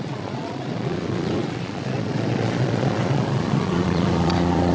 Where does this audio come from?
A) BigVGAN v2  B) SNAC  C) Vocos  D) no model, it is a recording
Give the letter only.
C